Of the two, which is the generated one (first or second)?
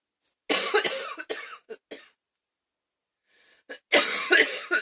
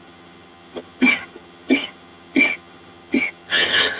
second